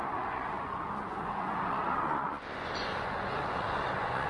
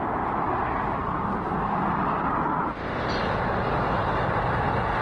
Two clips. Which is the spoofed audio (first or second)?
first